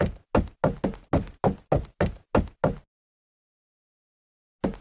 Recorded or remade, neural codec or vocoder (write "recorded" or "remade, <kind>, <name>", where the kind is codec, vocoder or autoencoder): recorded